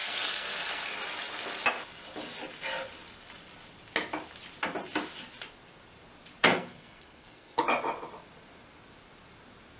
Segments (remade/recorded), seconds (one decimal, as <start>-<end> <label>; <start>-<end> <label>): 0.0-0.9 remade; 0.9-6.4 recorded; 6.4-7.6 remade; 7.6-9.8 recorded